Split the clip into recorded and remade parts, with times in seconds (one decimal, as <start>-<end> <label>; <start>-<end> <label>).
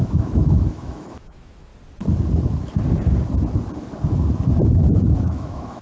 0.0-1.7 remade; 1.7-5.2 recorded; 5.2-5.8 remade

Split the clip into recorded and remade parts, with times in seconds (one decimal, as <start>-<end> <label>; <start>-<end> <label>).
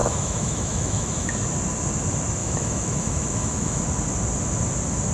0.0-1.3 remade; 1.3-2.4 recorded; 2.4-3.8 remade; 3.8-5.1 recorded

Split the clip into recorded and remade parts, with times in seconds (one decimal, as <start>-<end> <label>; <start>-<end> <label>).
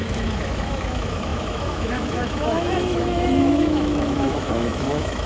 0.0-5.3 remade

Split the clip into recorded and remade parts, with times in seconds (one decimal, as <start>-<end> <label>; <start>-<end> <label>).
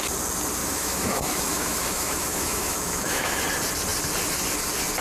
0.0-0.6 recorded; 0.6-3.4 remade; 3.4-5.0 recorded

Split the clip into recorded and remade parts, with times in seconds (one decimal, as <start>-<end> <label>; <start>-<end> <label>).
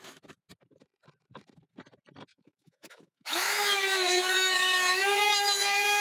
0.0-2.3 recorded; 2.3-6.0 remade